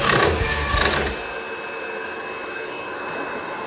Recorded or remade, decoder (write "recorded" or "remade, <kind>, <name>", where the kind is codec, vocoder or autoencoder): recorded